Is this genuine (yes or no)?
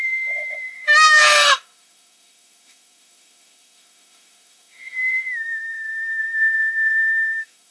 no